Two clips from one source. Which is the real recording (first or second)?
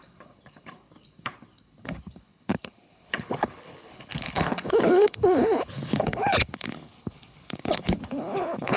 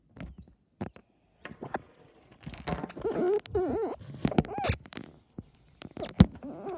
second